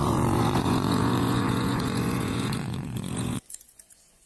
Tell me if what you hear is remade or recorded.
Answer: remade